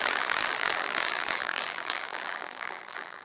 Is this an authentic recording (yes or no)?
no